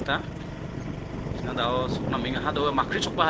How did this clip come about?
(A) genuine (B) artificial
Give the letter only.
A